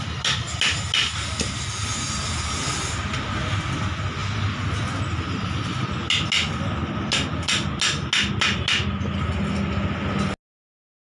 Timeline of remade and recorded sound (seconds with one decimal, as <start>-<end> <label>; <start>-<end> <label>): 0.0-11.1 recorded